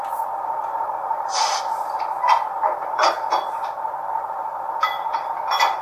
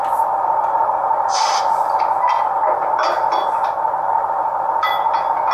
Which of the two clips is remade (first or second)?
first